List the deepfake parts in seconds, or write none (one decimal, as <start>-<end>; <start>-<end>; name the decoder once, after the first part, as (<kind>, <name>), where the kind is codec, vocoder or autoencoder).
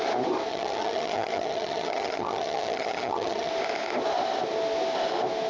0.5-3.5 (vocoder, HiFi-GAN)